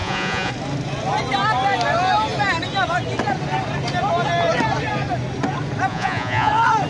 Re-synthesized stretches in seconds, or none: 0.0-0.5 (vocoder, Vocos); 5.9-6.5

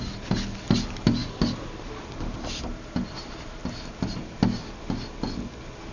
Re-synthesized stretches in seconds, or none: none

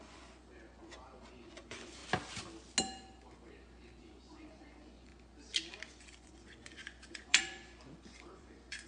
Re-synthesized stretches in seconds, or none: 0.0-2.0 (vocoder, Vocos); 4.0-5.1; 5.9-8.9

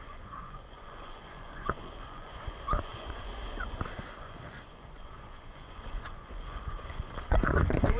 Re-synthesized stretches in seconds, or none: 0.0-8.0 (vocoder, Vocos)

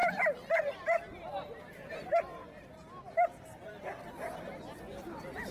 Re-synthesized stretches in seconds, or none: none

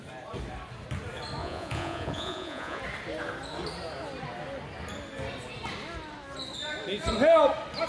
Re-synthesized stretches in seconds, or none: 1.4-2.8 (vocoder, Vocos)